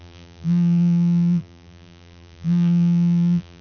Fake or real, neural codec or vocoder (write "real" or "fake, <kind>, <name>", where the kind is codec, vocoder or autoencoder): fake, vocoder, BigVGAN v2